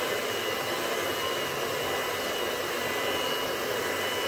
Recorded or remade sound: recorded